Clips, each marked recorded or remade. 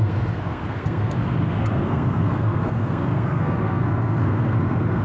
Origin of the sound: remade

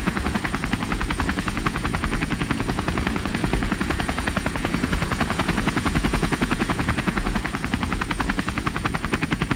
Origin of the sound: remade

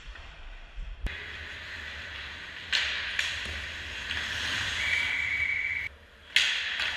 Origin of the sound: recorded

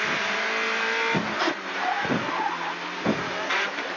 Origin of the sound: recorded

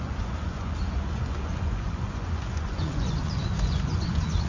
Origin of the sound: remade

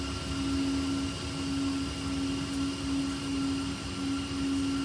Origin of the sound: recorded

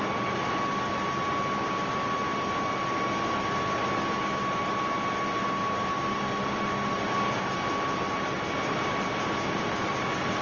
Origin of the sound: recorded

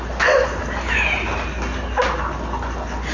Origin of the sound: recorded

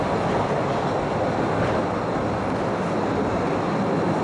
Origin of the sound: recorded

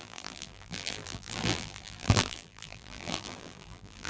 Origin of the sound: remade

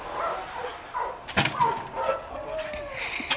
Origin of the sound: recorded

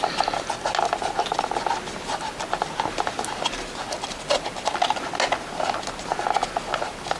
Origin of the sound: recorded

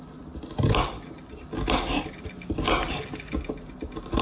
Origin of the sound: recorded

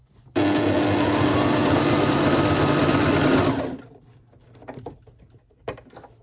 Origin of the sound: recorded